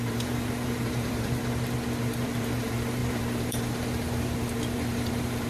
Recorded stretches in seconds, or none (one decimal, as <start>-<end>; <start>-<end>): 1.4-2.0